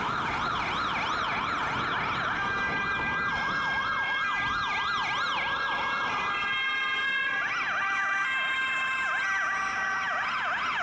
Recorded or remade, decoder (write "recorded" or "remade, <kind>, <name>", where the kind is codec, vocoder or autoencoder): recorded